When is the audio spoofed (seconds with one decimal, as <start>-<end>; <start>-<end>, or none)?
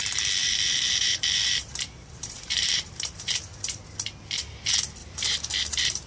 0.4-3.3; 5.0-6.1